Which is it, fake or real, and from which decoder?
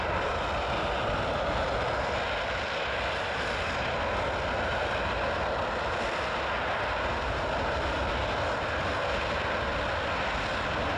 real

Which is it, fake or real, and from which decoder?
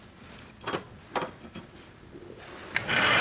real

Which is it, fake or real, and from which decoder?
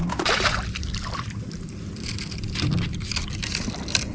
fake, vocoder, BigVGAN v2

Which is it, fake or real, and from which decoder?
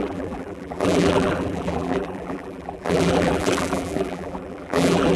fake, vocoder, BigVGAN v2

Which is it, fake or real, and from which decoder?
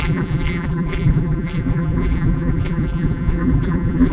fake, vocoder, BigVGAN v2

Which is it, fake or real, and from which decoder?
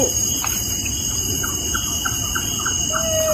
real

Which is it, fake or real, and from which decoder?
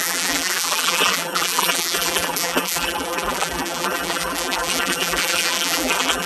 fake, vocoder, BigVGAN v2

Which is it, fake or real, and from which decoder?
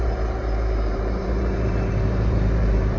fake, vocoder, BigVGAN v2